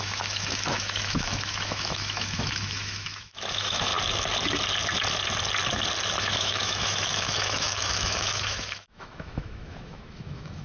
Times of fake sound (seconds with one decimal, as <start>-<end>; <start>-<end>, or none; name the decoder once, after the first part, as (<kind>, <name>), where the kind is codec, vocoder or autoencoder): 0.0-3.9 (autoencoder, DAC-VAE); 6.2-10.6